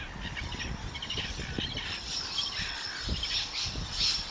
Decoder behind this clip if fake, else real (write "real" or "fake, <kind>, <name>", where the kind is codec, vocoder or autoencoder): real